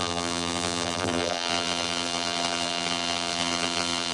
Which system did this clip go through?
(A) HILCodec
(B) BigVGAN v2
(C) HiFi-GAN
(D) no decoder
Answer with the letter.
B